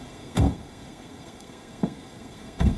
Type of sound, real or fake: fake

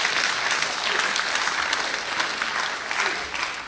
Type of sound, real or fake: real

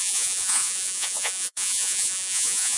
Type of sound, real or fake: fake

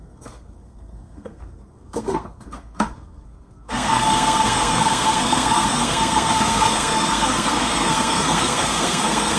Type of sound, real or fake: fake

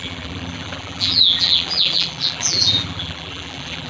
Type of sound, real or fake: fake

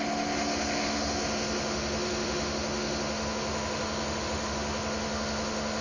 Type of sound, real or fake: fake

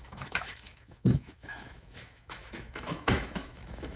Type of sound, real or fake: fake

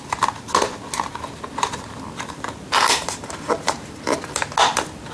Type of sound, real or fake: real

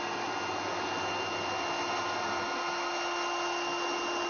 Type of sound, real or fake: real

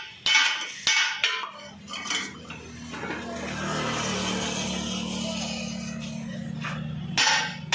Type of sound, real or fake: real